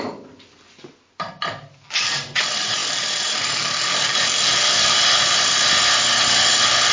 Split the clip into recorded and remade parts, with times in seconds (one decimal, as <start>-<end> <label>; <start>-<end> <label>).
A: 0.0-2.8 recorded; 2.8-5.8 remade; 5.8-6.9 recorded